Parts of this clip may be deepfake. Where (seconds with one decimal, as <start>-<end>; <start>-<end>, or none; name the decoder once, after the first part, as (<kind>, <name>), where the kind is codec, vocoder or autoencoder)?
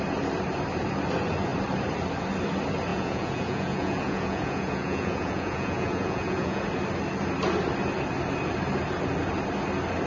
2.9-6.6 (vocoder, Vocos)